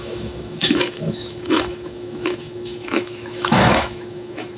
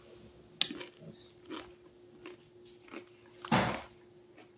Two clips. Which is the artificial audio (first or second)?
first